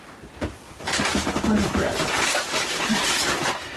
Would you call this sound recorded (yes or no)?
yes